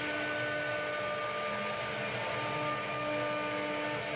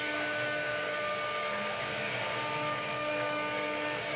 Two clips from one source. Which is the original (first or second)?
first